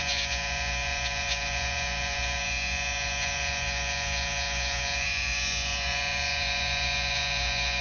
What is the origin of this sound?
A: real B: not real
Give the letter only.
B